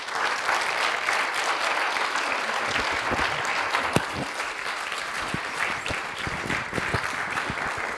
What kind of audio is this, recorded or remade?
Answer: recorded